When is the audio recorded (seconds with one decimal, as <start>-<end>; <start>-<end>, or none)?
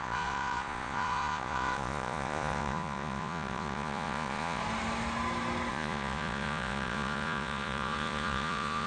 4.6-5.7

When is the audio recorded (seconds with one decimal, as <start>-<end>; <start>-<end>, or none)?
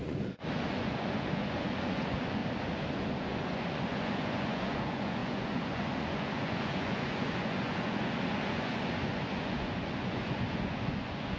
2.4-2.9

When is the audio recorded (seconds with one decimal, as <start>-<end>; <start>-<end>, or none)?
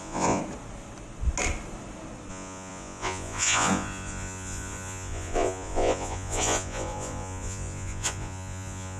0.4-2.3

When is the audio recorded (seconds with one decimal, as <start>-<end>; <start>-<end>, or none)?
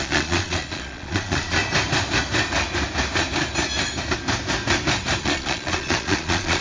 1.6-5.2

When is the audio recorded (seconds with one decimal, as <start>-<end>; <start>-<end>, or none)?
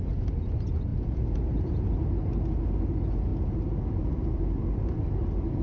0.0-0.9; 1.4-5.6